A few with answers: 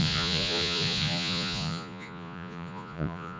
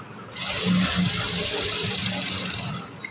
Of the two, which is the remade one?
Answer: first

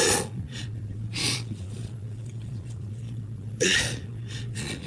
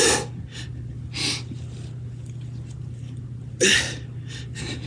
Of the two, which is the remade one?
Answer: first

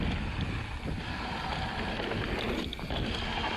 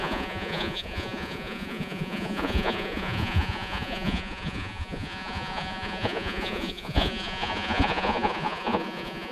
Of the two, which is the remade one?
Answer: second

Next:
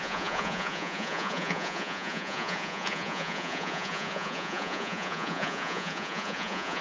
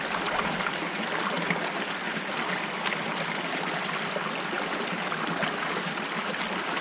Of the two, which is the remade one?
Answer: first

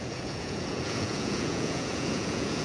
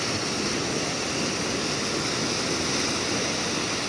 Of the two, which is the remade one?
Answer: first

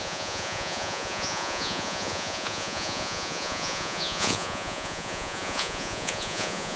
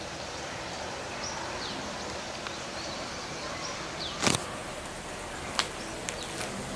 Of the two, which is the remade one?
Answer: first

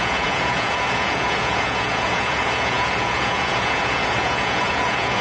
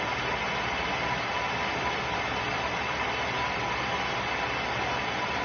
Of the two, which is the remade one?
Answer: first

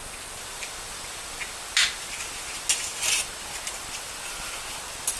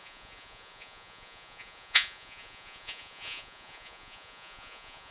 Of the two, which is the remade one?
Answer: second